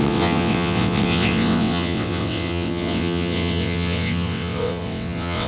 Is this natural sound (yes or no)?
no